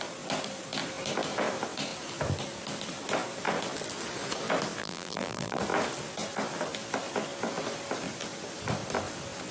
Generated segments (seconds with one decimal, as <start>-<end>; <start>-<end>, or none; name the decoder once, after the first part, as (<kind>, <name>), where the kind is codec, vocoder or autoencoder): 4.8-5.6 (vocoder, BigVGAN v2)